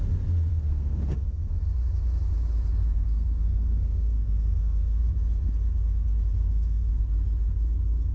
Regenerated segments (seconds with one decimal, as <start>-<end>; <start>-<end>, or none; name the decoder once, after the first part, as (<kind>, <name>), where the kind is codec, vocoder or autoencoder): 0.5-1.6 (codec, SNAC); 2.8-5.1; 6.4-7.0

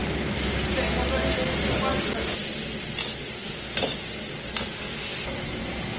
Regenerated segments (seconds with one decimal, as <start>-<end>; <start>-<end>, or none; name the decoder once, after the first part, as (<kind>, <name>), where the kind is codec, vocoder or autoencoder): none